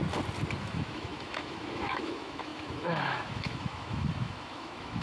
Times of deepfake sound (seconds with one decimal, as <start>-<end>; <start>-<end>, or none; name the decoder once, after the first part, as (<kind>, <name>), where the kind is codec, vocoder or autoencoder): 0.6-5.0 (autoencoder, DAC-VAE)